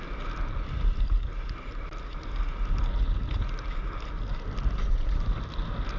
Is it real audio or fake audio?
real